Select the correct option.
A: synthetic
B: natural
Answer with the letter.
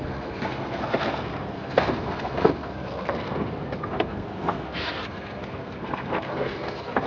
A